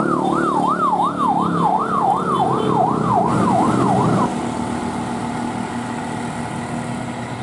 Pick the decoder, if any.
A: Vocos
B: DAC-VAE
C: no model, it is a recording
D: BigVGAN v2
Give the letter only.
C